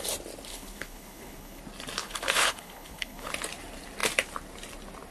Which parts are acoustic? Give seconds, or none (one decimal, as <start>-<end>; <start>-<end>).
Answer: 0.0-0.5; 1.6-2.0; 3.3-5.1